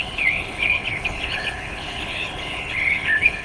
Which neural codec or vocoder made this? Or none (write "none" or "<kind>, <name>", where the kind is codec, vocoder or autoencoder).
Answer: codec, HILCodec